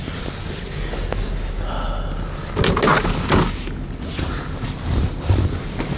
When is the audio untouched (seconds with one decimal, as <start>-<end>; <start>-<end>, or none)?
0.0-6.0